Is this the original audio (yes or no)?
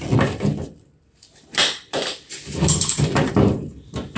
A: no